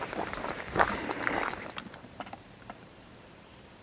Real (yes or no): no